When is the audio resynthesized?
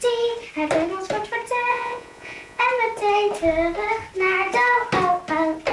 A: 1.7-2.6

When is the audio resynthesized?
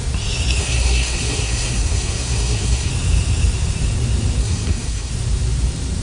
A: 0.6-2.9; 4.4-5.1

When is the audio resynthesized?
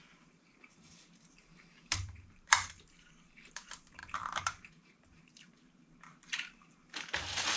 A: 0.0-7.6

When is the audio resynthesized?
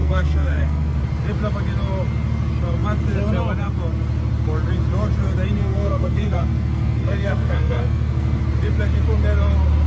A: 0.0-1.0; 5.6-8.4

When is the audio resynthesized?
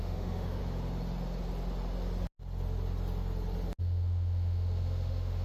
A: 0.0-0.6; 3.8-5.4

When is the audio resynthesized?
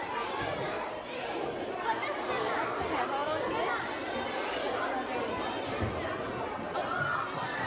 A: none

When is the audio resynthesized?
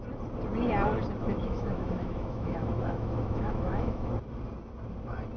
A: 1.2-4.1